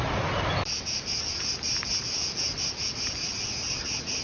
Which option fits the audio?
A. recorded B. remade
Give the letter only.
A